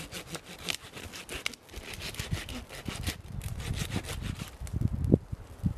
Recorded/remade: recorded